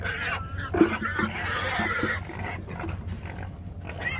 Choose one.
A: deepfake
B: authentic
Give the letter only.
B